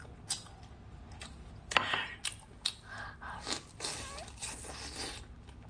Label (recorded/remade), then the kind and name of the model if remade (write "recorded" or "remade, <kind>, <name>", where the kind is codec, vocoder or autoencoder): recorded